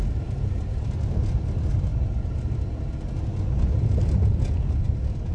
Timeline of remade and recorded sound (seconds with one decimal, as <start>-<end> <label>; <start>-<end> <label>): 0.0-5.3 recorded